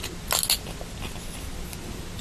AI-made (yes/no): no